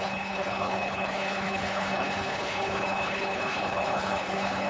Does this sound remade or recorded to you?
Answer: remade